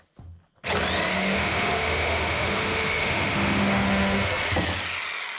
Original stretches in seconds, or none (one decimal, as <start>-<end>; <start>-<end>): 0.0-1.1; 4.3-5.4